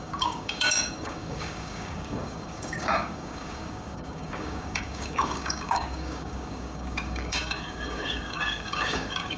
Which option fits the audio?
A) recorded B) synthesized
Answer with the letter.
B